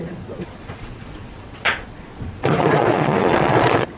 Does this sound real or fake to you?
fake